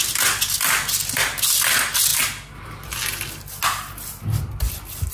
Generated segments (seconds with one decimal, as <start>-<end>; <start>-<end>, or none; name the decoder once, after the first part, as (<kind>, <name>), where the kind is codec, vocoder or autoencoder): none